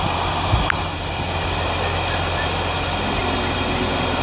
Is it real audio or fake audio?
real